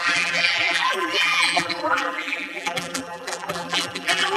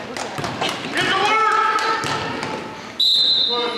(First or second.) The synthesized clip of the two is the first